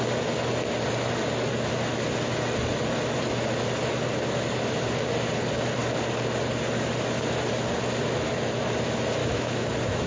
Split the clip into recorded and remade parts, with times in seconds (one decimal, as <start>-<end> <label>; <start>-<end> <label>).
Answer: 0.0-9.2 recorded; 9.2-10.1 remade